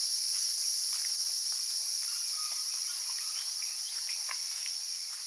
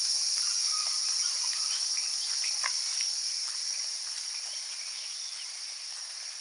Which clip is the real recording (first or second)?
first